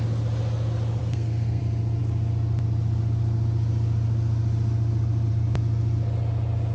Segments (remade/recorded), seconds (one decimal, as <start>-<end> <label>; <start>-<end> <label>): 0.0-1.0 recorded; 1.0-1.6 remade; 1.6-6.7 recorded